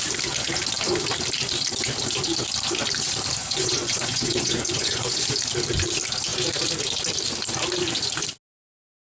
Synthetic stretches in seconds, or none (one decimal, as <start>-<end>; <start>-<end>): 3.4-5.2